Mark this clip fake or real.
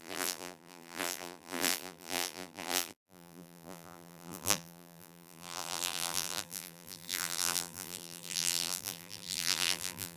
fake